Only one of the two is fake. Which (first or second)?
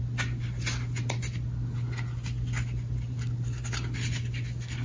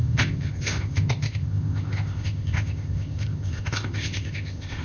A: second